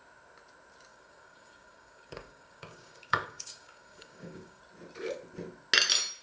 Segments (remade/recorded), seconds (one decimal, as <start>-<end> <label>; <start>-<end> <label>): 0.0-0.9 recorded; 0.9-4.6 remade; 4.6-6.2 recorded